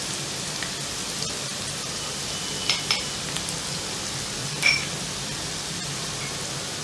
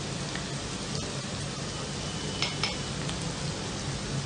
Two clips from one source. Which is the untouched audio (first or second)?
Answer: second